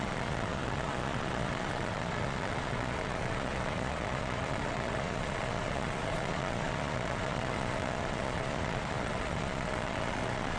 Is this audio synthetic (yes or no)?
yes